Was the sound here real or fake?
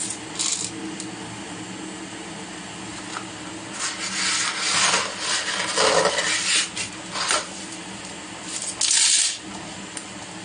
real